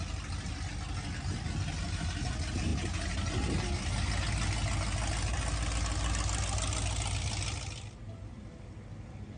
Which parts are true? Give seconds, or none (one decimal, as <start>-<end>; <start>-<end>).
0.0-9.4